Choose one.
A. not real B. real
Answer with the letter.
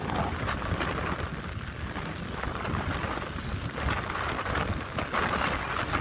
B